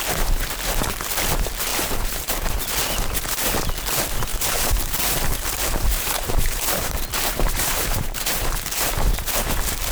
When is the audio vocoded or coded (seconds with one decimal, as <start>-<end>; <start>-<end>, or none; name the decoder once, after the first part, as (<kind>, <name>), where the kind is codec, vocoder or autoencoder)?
1.7-2.3 (vocoder, BigVGAN v2); 4.3-9.3